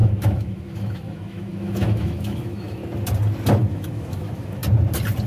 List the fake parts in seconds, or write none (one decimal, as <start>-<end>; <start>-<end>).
0.0-2.8; 3.7-4.6